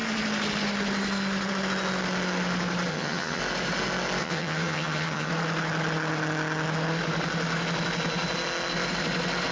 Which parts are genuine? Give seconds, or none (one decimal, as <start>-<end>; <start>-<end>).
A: 0.0-2.9; 3.4-4.2; 5.3-9.5